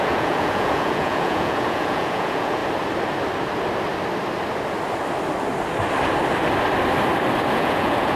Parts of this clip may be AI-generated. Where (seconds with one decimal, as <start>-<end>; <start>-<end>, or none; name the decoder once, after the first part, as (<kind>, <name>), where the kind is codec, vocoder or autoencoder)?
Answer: 0.0-2.6 (vocoder, Vocos); 7.5-8.2